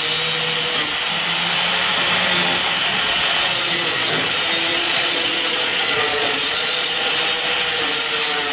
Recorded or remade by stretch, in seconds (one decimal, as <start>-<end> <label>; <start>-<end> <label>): 0.0-2.9 recorded; 2.9-4.1 remade; 4.1-4.7 recorded; 4.7-7.1 remade; 7.1-8.5 recorded